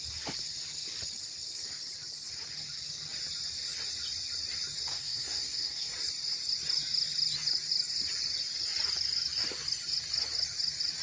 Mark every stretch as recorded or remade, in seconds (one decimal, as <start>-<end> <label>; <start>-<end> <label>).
0.0-4.9 recorded; 4.9-5.9 remade; 5.9-11.0 recorded